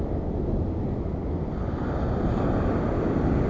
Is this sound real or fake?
real